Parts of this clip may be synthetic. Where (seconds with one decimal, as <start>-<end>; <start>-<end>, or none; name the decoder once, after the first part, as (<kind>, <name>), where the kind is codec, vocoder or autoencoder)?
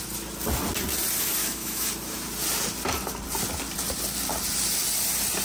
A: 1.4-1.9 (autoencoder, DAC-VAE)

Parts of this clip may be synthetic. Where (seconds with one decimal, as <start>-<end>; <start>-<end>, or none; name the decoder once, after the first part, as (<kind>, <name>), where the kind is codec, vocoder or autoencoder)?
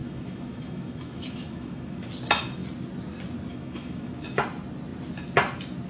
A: 0.0-2.1 (autoencoder, DAC-VAE); 3.5-4.1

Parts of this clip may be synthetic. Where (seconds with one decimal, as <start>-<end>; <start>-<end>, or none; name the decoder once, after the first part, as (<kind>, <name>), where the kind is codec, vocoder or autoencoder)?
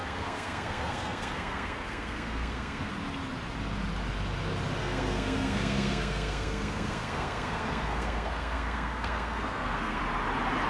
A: 0.0-2.9 (codec, SNAC); 4.8-10.0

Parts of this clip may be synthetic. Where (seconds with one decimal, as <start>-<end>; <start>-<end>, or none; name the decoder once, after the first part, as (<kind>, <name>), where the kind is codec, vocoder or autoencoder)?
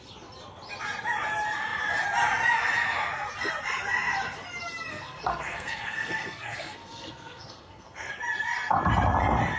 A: 4.9-8.1 (codec, SNAC)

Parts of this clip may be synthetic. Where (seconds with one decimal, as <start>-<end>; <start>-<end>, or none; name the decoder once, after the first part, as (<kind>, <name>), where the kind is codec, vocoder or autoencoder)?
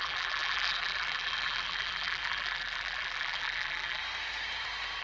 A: 0.0-4.0 (vocoder, BigVGAN v2)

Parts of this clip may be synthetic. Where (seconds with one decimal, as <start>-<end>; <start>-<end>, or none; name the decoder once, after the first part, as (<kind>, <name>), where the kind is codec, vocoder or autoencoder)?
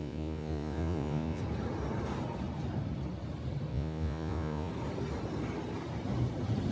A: 0.0-1.4 (vocoder, Vocos); 3.7-4.7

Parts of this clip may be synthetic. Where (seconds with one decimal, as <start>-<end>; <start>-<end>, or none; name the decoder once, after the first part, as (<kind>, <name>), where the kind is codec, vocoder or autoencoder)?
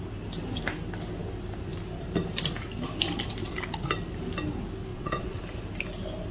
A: 4.9-5.4 (vocoder, WaveNeXt)